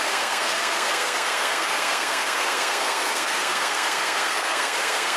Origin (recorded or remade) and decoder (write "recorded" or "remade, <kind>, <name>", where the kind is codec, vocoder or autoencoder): remade, codec, SNAC